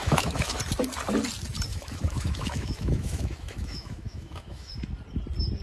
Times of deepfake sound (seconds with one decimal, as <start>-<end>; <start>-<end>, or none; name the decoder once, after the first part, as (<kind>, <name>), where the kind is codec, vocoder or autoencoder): 0.0-0.6 (autoencoder, DAC-VAE); 1.7-4.7